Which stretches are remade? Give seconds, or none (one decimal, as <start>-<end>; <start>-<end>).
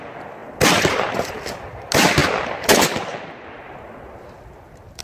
none